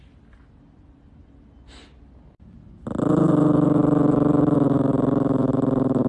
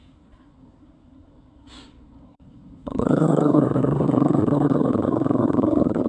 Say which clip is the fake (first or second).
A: second